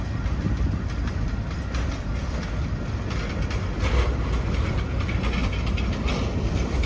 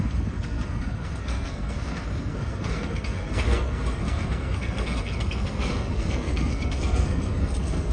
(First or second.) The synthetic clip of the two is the second